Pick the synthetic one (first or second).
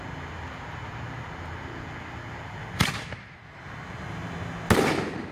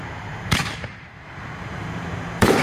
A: second